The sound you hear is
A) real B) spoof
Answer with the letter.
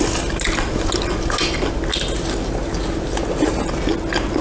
A